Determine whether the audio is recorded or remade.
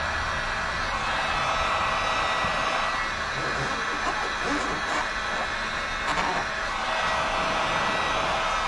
recorded